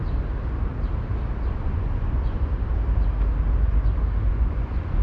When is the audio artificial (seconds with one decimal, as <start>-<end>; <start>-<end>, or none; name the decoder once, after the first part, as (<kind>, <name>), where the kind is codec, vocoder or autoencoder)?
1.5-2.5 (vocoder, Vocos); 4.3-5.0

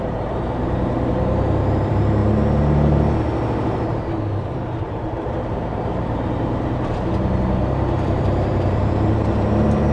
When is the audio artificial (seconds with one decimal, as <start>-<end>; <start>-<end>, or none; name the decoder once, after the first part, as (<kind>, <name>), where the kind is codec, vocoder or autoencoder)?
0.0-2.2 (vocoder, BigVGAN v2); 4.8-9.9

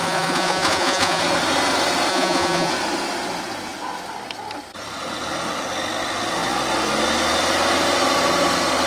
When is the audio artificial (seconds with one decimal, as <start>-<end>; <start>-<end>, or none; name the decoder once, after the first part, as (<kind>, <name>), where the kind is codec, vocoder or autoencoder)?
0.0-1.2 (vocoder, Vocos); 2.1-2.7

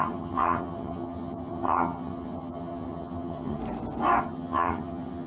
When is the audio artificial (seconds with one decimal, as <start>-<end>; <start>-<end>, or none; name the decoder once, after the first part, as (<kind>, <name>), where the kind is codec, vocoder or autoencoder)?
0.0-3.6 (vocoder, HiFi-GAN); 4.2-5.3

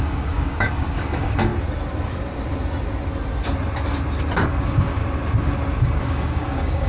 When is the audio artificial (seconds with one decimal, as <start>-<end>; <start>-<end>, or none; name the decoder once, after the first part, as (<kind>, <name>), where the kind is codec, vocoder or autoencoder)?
0.0-1.5 (codec, DAC); 4.5-5.0; 5.8-6.9